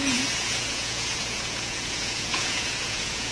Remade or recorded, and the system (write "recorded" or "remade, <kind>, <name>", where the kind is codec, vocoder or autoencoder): remade, vocoder, Vocos